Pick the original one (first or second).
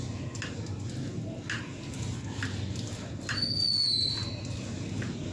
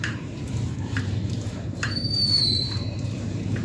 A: first